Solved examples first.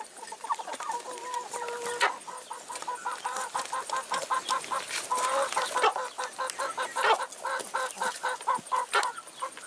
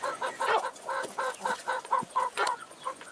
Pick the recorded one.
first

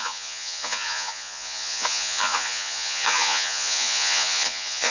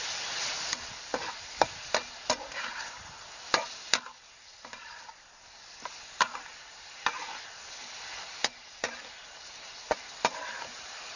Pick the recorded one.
second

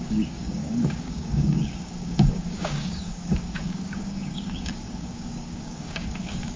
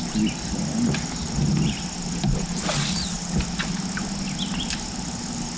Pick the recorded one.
second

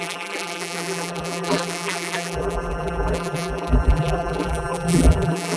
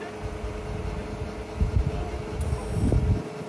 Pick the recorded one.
second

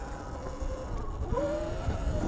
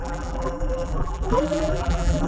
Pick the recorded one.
first